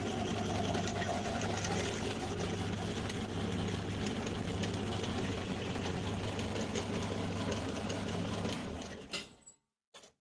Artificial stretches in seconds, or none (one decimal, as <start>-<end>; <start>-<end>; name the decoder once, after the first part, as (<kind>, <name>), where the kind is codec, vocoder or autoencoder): 0.9-1.4 (vocoder, Vocos); 5.1-6.0; 8.6-9.1